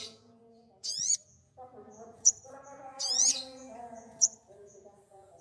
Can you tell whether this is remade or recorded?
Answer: remade